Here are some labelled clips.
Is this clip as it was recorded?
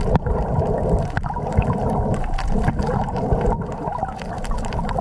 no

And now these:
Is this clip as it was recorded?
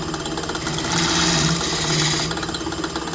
yes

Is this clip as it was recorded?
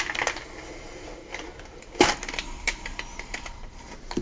yes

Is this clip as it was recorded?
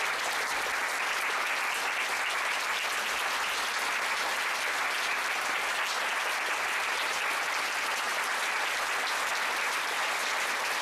yes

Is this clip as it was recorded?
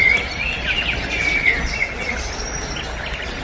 yes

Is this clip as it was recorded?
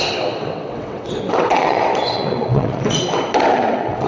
no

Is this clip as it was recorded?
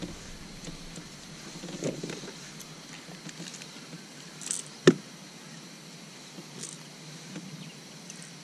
yes